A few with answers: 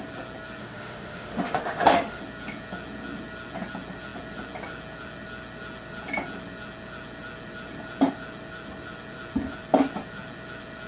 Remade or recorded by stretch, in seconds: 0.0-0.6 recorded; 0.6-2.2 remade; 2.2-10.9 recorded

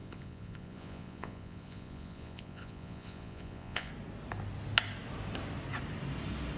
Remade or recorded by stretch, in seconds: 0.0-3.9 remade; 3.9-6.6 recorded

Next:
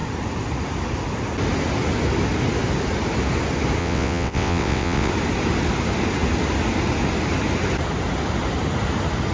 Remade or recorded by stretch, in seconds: 0.0-3.8 recorded; 3.8-5.1 remade; 5.1-9.3 recorded

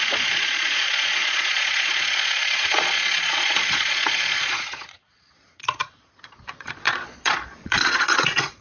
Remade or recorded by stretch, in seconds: 0.0-8.6 remade

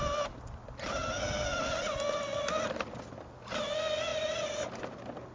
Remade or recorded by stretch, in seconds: 0.0-4.1 recorded; 4.1-4.7 remade; 4.7-5.3 recorded

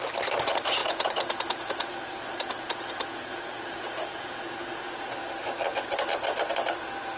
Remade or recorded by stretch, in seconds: 0.0-0.8 recorded; 0.8-5.1 remade; 5.1-7.2 recorded